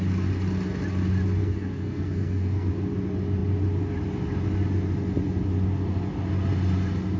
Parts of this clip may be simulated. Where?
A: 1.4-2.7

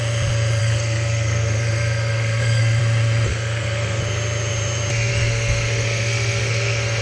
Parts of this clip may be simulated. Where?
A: 0.6-2.8; 3.3-4.0; 5.1-7.0